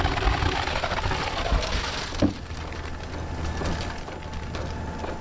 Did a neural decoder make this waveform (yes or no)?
no